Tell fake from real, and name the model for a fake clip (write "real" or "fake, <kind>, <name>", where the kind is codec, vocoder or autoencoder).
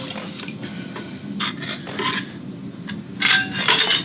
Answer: real